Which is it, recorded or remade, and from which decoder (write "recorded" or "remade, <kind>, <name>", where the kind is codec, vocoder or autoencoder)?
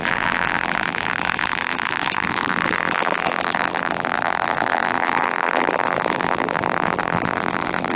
remade, vocoder, BigVGAN v2